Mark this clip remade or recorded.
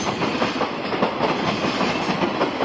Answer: recorded